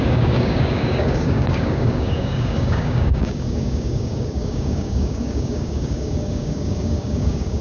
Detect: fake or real fake